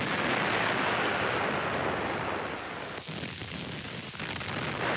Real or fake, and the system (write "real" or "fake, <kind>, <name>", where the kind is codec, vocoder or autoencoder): real